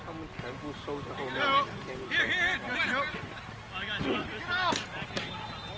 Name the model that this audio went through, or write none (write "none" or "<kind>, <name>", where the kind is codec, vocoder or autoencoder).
none